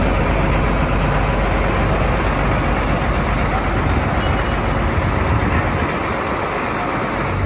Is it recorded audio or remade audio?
recorded